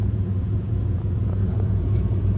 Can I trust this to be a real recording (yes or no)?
no